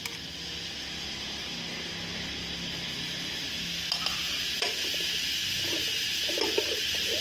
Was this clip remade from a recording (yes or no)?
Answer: no